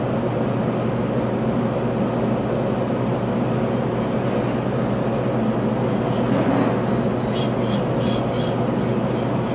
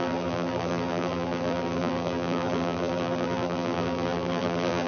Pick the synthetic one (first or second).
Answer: second